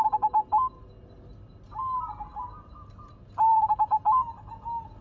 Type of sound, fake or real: real